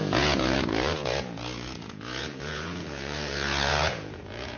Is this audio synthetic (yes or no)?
yes